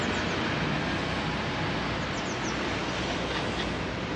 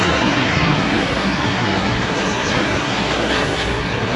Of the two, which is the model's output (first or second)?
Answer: second